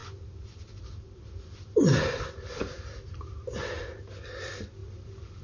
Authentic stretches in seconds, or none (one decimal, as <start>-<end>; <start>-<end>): 3.2-4.8